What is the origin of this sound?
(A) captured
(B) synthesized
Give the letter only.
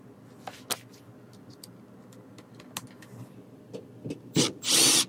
A